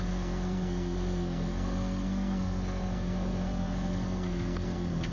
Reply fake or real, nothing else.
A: fake